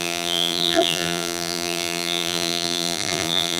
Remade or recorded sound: remade